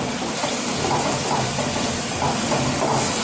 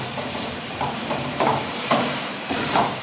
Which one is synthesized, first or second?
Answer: second